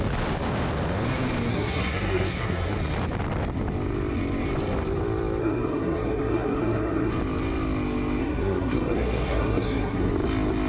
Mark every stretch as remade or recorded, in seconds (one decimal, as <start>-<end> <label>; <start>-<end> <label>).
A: 0.0-1.5 recorded; 1.5-2.8 remade; 2.8-5.4 recorded; 5.4-7.1 remade; 7.1-8.2 recorded; 8.2-10.1 remade; 10.1-10.7 recorded